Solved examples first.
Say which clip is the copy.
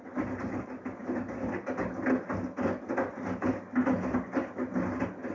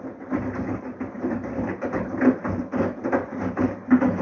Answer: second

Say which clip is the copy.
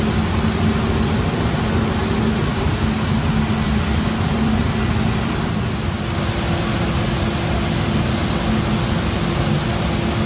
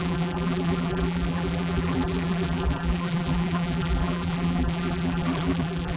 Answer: second